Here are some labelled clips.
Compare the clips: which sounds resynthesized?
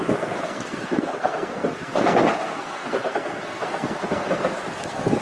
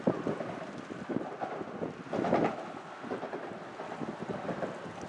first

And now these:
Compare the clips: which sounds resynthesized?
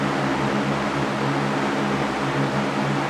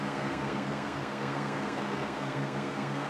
second